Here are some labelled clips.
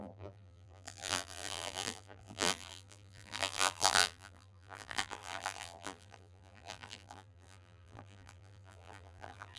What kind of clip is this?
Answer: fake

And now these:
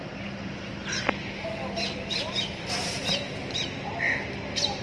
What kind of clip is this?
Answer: real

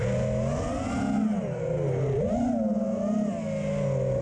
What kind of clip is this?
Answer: real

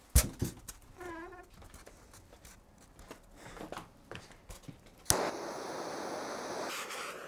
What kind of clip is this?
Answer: real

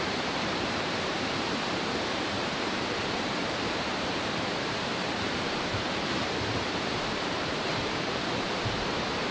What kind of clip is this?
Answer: fake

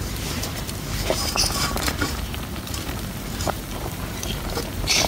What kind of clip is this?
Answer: fake